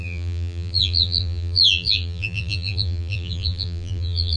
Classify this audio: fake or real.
fake